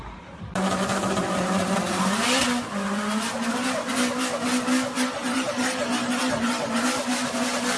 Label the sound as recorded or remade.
recorded